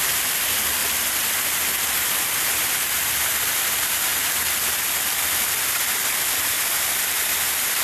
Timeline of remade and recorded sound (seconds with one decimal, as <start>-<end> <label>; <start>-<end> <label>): 0.0-0.8 remade; 0.8-2.1 recorded; 2.1-4.1 remade; 4.1-4.7 recorded; 4.7-7.8 remade